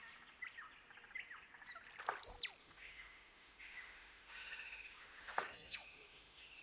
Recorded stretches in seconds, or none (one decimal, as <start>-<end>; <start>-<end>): 0.0-2.6